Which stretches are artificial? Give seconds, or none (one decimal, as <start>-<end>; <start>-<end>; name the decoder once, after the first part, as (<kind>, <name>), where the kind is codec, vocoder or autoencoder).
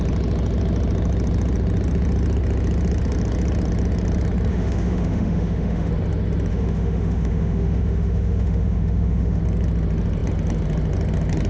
4.5-5.9 (autoencoder, DAC-VAE); 6.5-9.4